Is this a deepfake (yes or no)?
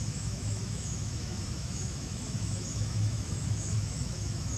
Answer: yes